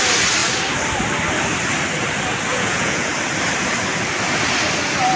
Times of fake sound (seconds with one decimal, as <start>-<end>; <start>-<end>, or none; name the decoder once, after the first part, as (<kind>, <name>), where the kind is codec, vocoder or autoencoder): 2.5-3.1 (vocoder, Vocos)